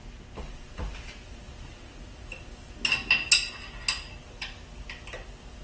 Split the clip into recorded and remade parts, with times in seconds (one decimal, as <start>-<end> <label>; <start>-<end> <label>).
0.0-2.7 remade; 2.7-4.2 recorded; 4.2-5.6 remade